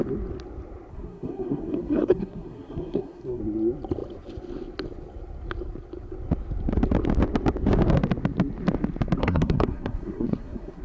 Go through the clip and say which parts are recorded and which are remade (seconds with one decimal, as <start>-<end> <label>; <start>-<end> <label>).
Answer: 0.0-0.9 recorded; 0.9-3.4 remade; 3.4-9.2 recorded; 9.2-10.8 remade